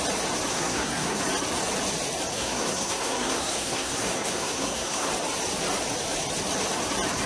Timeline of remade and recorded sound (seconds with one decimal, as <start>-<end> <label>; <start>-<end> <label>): 0.0-0.5 recorded; 0.5-1.2 remade; 1.2-2.3 recorded; 2.3-5.1 remade; 5.1-7.3 recorded